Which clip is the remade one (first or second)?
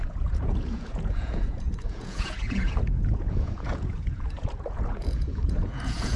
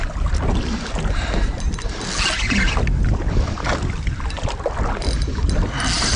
first